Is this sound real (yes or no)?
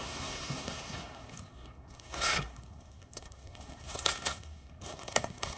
no